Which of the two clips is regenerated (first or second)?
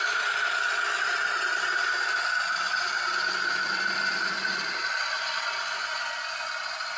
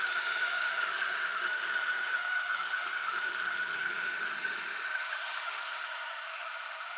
second